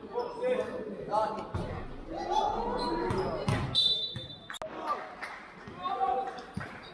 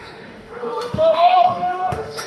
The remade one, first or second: second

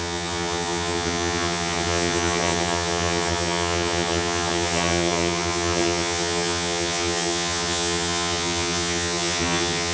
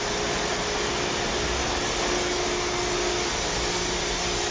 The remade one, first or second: first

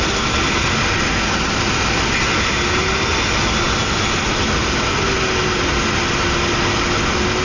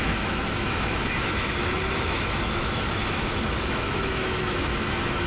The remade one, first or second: second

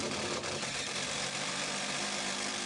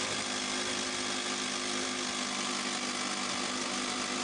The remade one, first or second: first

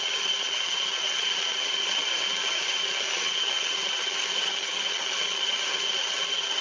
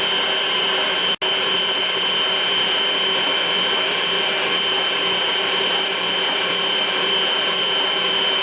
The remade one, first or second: first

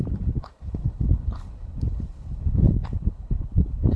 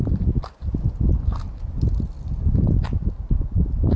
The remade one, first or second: first